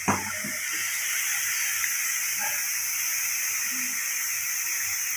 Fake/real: real